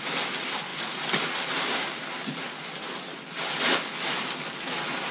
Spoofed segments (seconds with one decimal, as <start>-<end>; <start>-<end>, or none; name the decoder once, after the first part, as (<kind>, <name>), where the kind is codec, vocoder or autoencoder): none